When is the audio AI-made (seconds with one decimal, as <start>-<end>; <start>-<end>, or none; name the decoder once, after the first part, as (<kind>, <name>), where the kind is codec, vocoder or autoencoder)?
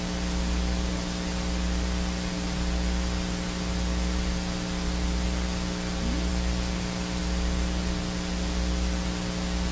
none